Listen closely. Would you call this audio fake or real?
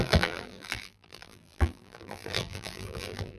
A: fake